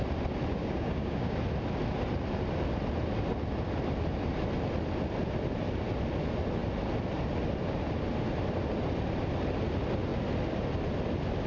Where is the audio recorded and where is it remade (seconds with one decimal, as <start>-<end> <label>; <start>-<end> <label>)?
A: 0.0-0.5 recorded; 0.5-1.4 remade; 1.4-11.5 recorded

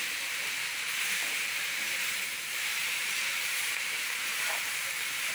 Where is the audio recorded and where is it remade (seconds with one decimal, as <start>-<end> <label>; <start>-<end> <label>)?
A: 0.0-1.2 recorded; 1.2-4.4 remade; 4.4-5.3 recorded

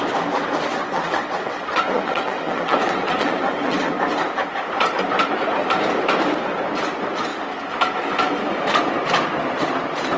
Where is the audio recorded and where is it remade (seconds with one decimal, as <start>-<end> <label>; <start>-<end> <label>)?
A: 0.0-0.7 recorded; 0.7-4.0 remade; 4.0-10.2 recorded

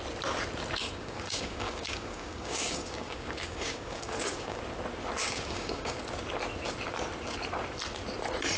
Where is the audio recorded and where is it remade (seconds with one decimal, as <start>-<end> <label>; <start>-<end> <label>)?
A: 0.0-0.8 recorded; 0.8-4.6 remade; 4.6-5.2 recorded; 5.2-6.0 remade; 6.0-8.6 recorded

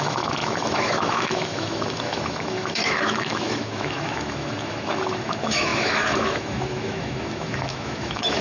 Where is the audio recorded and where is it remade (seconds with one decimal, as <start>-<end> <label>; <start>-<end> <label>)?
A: 0.0-8.4 remade

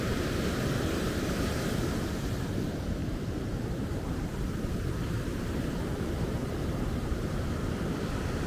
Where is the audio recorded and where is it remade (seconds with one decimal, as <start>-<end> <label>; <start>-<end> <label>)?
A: 0.0-3.0 recorded; 3.0-8.1 remade; 8.1-8.5 recorded

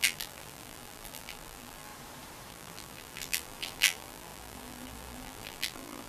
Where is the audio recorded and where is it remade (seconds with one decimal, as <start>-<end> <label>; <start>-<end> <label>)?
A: 0.0-1.9 remade; 1.9-2.5 recorded; 2.5-6.1 remade